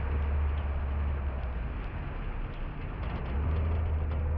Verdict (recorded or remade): recorded